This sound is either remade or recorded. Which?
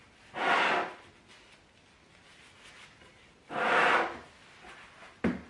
recorded